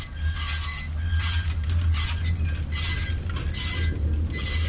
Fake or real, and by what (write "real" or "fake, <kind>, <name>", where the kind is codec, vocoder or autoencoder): real